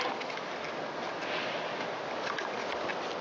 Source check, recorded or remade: recorded